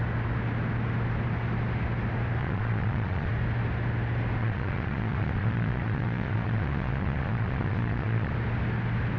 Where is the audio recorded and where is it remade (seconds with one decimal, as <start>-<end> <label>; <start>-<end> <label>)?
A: 0.0-2.4 recorded; 2.4-3.3 remade; 3.3-4.4 recorded; 4.4-8.3 remade; 8.3-9.2 recorded